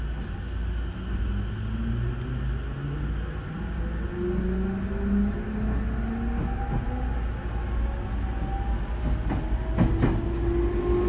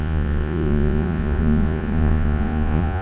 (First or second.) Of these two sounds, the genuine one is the first